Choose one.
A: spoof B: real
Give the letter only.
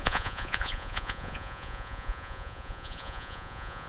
A